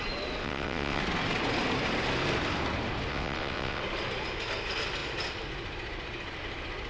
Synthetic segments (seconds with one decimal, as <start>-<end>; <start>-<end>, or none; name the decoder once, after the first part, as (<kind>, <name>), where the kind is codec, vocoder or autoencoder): 0.4-1.0 (vocoder, WaveNeXt); 3.1-3.8